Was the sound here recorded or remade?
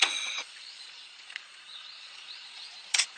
remade